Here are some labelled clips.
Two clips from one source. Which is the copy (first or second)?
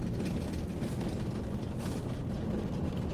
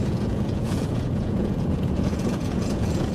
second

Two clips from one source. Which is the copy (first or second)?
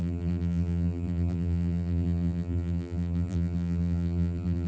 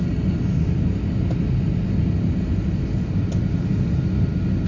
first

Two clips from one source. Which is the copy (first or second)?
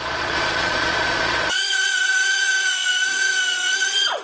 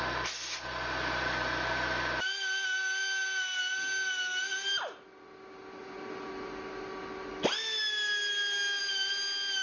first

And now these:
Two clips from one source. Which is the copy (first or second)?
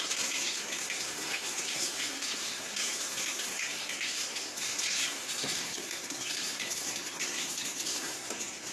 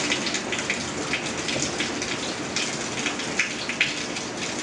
first